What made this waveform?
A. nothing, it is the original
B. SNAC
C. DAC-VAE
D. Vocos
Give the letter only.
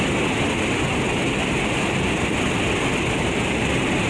A